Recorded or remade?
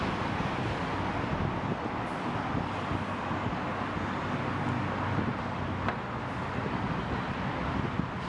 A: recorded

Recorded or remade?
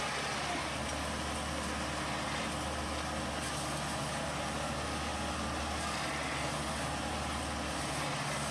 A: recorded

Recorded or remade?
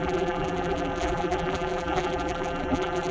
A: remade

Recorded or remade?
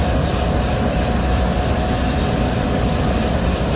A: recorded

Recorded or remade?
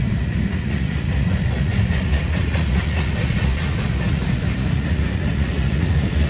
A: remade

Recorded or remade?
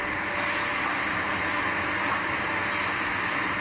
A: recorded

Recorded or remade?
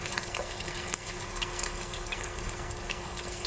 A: remade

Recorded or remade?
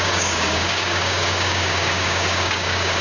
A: remade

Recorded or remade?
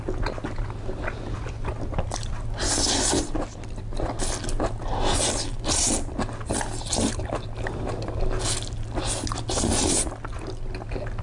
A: recorded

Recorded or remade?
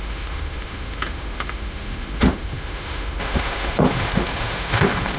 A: remade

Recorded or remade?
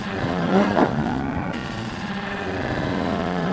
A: remade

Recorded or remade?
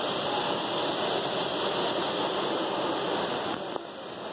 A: recorded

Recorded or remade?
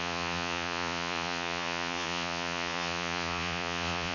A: remade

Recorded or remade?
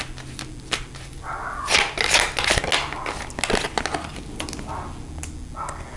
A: recorded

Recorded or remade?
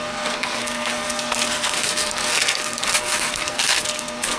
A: remade